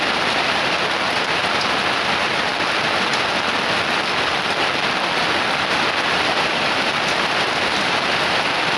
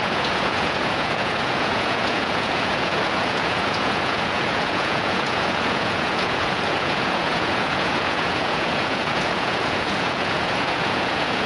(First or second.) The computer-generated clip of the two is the second